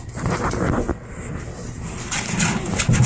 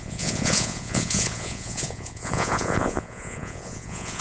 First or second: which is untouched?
first